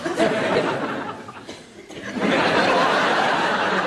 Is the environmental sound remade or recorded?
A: recorded